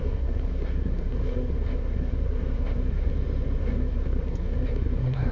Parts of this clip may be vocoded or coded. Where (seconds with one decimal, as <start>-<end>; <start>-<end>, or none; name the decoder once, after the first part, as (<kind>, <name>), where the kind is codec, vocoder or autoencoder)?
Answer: 0.0-3.1 (codec, SNAC); 3.6-5.3